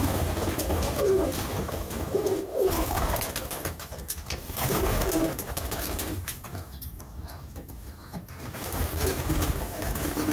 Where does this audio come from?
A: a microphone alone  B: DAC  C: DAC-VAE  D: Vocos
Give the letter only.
B